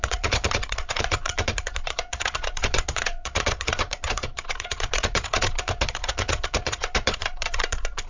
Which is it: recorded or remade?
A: remade